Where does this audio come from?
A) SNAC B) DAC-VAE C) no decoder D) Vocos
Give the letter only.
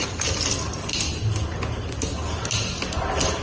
C